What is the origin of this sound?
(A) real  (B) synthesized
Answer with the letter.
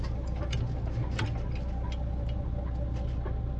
A